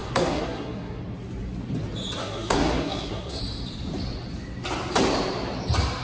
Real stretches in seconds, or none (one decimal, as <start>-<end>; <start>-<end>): 1.0-2.2; 3.4-6.0